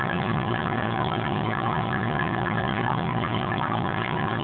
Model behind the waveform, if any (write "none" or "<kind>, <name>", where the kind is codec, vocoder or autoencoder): vocoder, Vocos